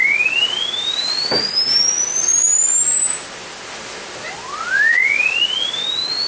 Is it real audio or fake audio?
real